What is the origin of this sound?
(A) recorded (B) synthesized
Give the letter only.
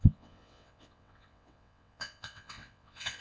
B